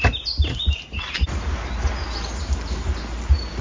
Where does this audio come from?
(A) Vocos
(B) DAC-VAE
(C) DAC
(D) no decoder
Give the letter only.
D